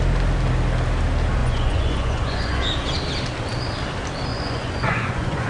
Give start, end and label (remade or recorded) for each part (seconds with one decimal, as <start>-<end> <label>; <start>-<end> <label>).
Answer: 0.0-1.4 recorded; 1.4-2.6 remade; 2.6-4.3 recorded; 4.3-5.5 remade